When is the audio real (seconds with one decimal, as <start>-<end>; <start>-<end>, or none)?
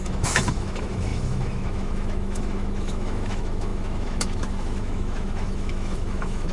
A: none